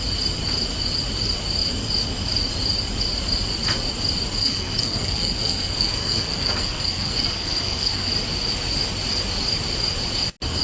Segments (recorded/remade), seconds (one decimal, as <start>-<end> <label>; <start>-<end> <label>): 0.0-4.4 recorded; 4.4-8.1 remade; 8.1-10.6 recorded